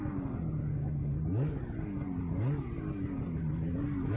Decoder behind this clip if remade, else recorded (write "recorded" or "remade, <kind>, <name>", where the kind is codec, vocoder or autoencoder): recorded